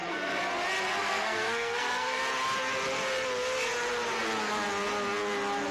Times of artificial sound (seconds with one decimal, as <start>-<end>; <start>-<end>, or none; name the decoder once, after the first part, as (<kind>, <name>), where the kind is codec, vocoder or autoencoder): 0.0-0.4 (codec, SNAC); 1.0-2.2